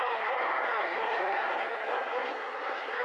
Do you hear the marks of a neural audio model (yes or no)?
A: yes